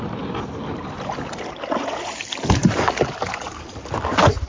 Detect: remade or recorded recorded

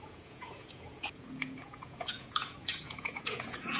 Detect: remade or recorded remade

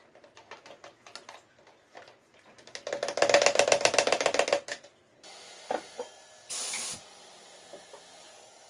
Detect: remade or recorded recorded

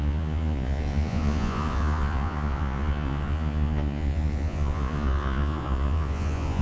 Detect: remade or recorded remade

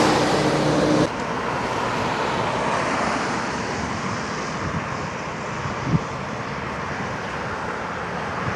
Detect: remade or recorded recorded